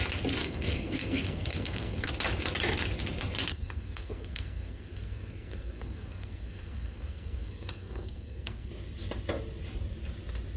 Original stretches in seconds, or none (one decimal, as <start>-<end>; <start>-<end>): 0.0-0.4; 2.1-3.5; 8.7-10.6